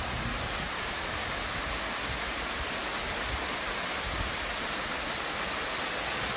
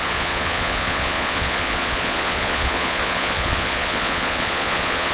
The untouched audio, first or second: first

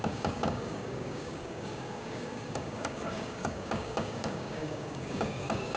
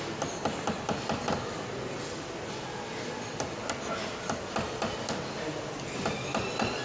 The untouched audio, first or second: second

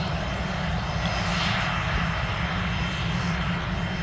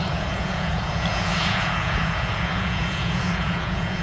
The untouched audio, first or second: first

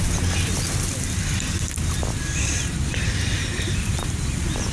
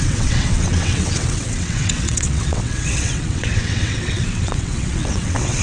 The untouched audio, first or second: first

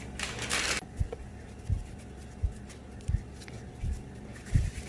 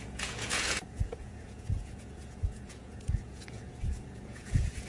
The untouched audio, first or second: first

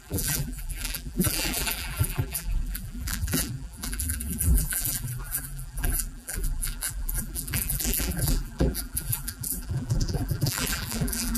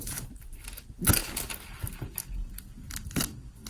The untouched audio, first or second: second